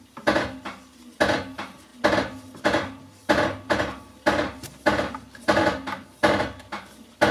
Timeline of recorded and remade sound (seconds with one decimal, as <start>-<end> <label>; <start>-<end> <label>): 0.0-7.3 recorded